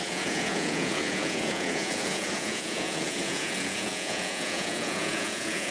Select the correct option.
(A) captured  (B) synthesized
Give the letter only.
B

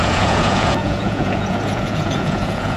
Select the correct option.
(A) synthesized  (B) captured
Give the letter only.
A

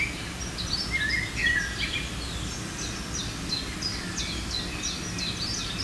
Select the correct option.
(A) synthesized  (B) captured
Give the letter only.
B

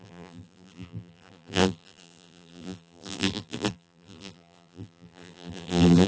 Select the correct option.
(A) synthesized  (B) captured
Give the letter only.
A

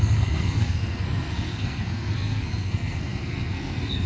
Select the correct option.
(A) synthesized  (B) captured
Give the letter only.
A